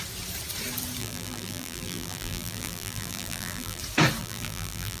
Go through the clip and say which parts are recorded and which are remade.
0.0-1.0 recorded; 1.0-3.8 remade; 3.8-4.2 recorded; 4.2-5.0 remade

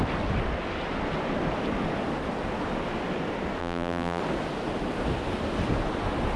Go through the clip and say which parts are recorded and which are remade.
0.0-3.6 recorded; 3.6-4.2 remade; 4.2-6.4 recorded

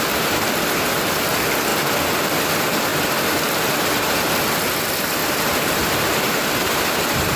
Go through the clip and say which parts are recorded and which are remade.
0.0-5.2 recorded; 5.2-7.4 remade

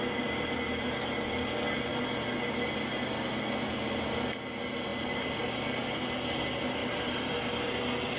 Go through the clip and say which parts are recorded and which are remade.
0.0-6.8 recorded; 6.8-7.7 remade; 7.7-8.2 recorded

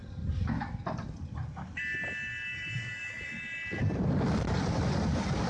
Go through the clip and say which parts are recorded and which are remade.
0.0-5.5 recorded

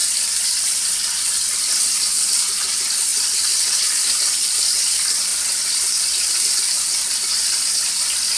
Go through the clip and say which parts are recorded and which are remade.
0.0-3.1 recorded; 3.1-3.8 remade; 3.8-5.3 recorded; 5.3-6.3 remade; 6.3-8.4 recorded

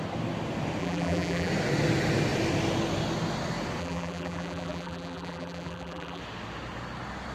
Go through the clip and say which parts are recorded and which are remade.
0.0-0.8 recorded; 0.8-1.5 remade; 1.5-3.8 recorded; 3.8-6.2 remade; 6.2-7.3 recorded

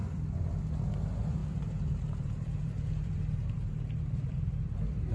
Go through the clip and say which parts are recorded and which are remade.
0.0-1.4 recorded; 1.4-4.5 remade; 4.5-5.1 recorded